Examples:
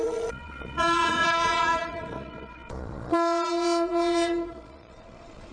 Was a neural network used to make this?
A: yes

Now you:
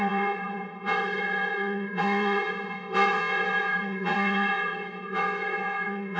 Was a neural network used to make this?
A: yes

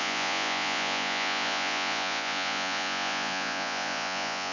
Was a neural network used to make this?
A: yes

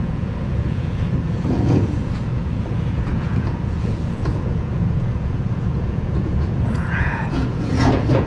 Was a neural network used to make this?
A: yes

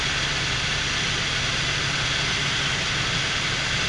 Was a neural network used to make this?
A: no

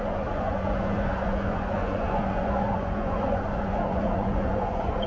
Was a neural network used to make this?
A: yes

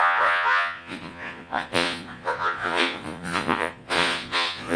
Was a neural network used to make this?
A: yes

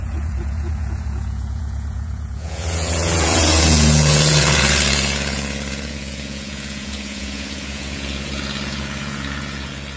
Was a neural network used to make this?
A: yes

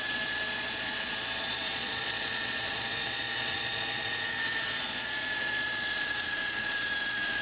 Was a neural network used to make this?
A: yes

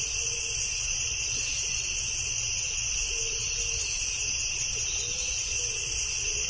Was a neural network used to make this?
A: no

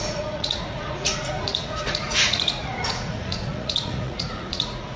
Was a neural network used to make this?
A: yes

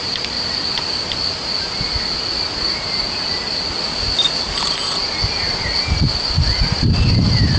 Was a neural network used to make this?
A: no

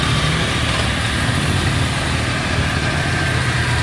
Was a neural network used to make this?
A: no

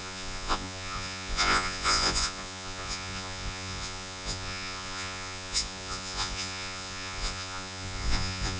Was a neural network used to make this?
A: yes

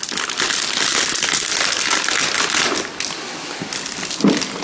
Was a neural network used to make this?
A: no